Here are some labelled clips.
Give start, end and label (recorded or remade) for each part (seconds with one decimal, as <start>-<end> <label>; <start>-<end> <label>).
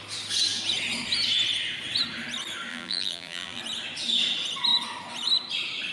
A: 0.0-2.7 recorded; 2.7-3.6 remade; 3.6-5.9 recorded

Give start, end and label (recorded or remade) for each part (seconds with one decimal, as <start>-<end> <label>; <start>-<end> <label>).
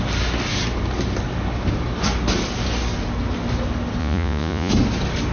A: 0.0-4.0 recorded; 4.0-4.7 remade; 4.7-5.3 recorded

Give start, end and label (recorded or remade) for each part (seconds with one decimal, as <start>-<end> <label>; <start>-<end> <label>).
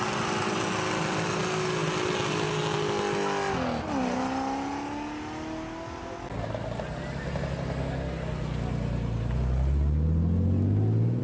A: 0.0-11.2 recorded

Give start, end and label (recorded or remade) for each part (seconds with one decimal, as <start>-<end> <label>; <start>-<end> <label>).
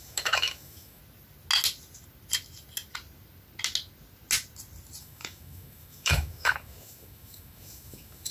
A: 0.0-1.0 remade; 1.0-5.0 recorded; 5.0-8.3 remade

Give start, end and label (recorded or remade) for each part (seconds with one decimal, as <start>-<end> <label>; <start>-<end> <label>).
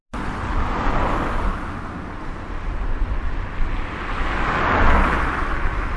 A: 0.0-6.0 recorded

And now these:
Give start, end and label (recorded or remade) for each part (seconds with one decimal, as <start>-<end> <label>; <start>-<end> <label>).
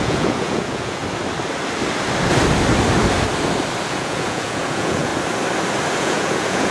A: 0.0-1.0 remade; 1.0-3.9 recorded; 3.9-5.1 remade; 5.1-6.0 recorded; 6.0-6.7 remade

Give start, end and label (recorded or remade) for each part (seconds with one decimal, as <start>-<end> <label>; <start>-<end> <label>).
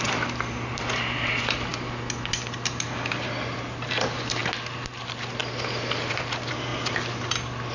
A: 0.0-7.7 recorded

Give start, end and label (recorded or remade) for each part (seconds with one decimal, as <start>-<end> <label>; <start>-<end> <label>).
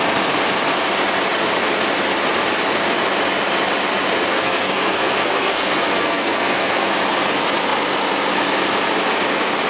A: 0.0-4.3 recorded; 4.3-6.9 remade; 6.9-9.7 recorded